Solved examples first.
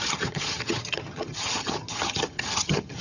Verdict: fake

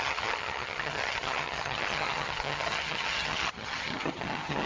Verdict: fake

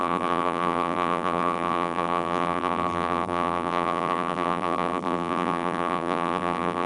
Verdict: fake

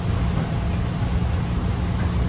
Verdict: real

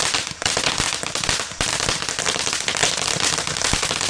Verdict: real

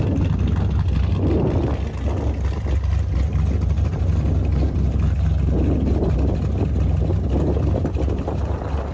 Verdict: real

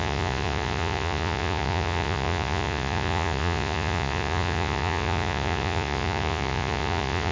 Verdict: fake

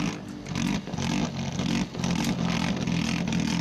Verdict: real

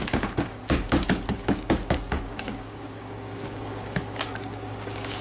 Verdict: fake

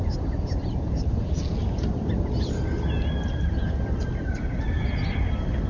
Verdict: real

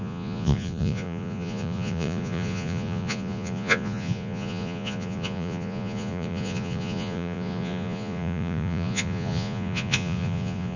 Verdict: fake